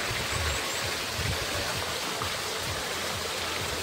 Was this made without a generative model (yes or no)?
yes